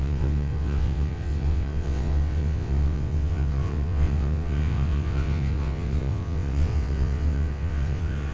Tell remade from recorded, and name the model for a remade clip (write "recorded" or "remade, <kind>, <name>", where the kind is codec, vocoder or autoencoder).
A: remade, vocoder, WaveNeXt